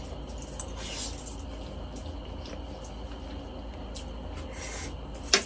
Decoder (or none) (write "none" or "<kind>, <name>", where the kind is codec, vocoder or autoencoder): none